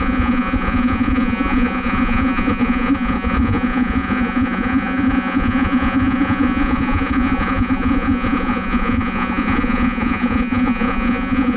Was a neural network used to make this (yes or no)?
yes